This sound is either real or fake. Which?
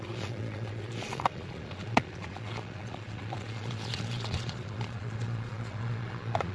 fake